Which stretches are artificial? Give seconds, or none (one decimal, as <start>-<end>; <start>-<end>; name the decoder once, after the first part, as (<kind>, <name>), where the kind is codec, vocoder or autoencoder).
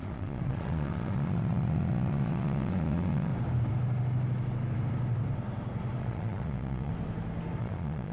0.0-3.3 (vocoder, Vocos); 6.0-6.9; 7.6-8.1